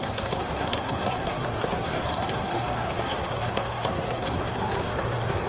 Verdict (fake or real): fake